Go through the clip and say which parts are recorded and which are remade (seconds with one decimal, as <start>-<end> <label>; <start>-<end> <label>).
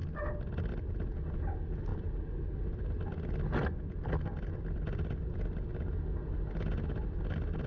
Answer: 0.0-7.7 recorded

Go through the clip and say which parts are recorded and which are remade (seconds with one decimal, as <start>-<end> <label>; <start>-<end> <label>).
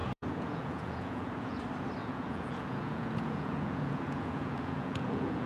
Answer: 0.0-1.6 remade; 1.6-2.0 recorded; 2.0-5.5 remade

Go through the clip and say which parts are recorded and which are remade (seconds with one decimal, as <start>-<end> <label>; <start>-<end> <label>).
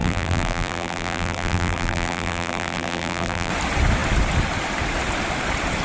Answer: 0.0-3.5 remade; 3.5-5.8 recorded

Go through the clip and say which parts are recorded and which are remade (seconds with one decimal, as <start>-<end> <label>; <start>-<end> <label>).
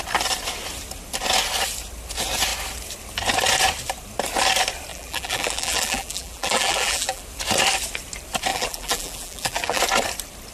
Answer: 0.0-4.9 recorded; 4.9-7.2 remade; 7.2-8.5 recorded; 8.5-9.8 remade; 9.8-10.5 recorded